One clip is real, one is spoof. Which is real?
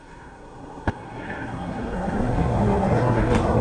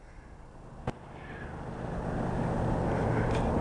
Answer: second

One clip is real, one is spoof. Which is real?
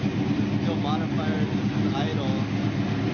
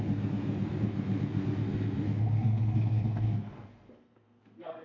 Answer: first